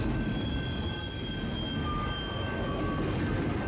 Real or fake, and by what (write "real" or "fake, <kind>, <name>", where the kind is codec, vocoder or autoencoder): real